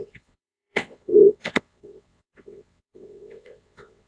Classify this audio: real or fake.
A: fake